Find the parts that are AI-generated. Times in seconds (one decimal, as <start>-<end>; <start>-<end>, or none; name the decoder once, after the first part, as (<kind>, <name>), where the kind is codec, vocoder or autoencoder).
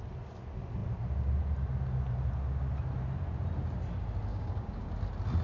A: 4.3-4.9 (codec, DAC)